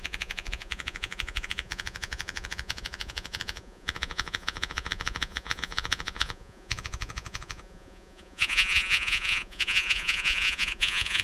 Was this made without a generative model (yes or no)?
no